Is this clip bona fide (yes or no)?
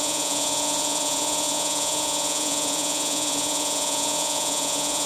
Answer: no